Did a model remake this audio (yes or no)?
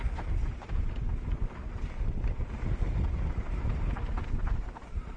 no